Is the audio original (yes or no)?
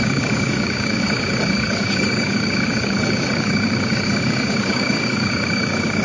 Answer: no